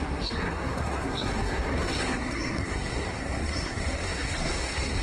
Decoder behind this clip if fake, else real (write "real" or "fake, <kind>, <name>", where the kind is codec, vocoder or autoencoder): fake, codec, SNAC